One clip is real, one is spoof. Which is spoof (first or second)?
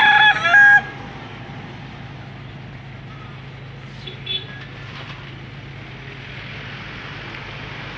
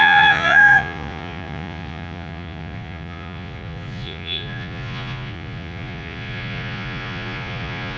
second